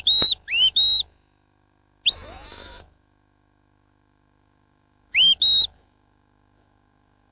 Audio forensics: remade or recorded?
remade